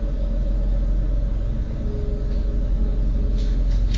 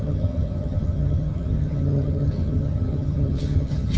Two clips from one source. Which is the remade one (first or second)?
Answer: second